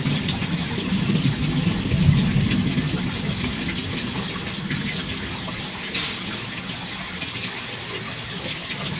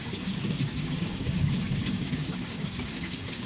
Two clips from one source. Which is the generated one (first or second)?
second